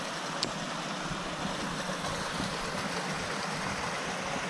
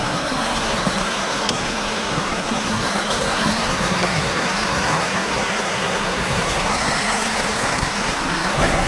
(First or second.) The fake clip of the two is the second